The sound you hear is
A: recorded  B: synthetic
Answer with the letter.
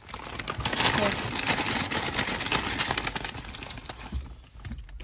A